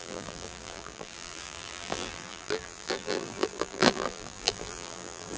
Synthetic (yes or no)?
yes